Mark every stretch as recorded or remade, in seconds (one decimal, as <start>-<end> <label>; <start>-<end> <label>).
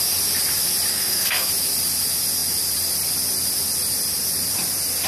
0.0-0.9 recorded; 0.9-1.5 remade; 1.5-5.1 recorded